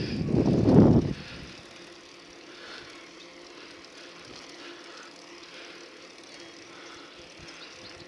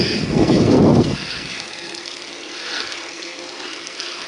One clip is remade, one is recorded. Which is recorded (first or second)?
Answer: first